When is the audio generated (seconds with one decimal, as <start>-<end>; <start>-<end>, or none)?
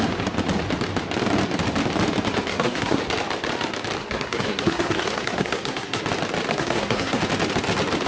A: 2.5-3.0; 4.0-6.0; 6.5-7.2